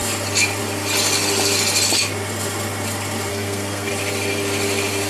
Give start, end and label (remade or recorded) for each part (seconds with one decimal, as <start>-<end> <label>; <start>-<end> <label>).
0.0-3.3 recorded; 3.3-3.9 remade; 3.9-5.1 recorded